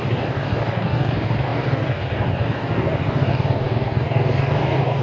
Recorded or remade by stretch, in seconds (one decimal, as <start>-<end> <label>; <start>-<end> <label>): 0.0-5.0 remade